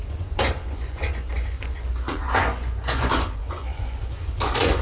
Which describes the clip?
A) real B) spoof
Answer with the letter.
B